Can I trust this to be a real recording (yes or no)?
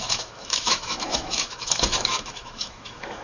no